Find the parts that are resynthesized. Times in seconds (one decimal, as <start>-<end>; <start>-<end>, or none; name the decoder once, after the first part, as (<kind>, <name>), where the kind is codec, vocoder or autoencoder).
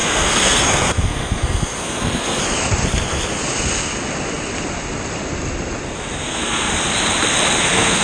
0.0-2.4 (codec, SNAC); 6.2-6.7; 7.6-8.0